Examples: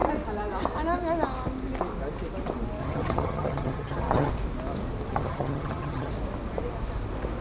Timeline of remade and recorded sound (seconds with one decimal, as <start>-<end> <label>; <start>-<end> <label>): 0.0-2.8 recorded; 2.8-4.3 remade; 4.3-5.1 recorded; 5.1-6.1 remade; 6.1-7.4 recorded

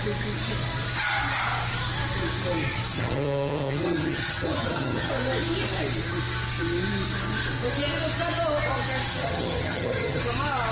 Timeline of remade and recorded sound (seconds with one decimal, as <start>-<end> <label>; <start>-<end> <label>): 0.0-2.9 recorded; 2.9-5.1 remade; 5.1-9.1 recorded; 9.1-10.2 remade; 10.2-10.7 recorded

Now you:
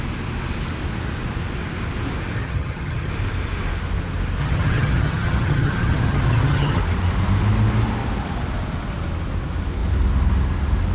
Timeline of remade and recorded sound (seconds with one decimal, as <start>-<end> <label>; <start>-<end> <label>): 0.0-2.4 recorded; 2.4-3.1 remade; 3.1-4.4 recorded; 4.4-6.8 remade; 6.8-10.9 recorded

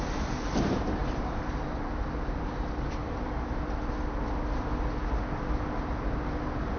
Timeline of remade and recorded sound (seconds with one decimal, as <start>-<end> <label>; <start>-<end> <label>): 0.0-6.8 recorded

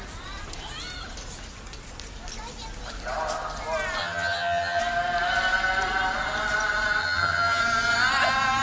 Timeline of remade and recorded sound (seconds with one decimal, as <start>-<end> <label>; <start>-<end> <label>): 0.0-4.0 recorded; 4.0-4.8 remade; 4.8-7.0 recorded; 7.0-7.6 remade; 7.6-8.6 recorded

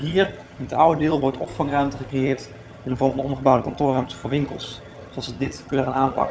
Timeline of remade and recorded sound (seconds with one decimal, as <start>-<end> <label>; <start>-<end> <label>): 0.0-1.5 remade; 1.5-2.1 recorded; 2.1-6.3 remade

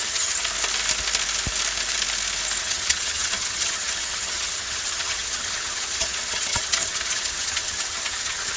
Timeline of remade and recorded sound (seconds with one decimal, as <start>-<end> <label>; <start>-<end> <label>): 0.0-0.4 remade; 0.4-2.6 recorded; 2.6-8.6 remade